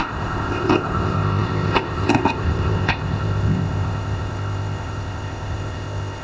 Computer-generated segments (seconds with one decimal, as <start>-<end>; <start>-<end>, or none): 0.0-6.2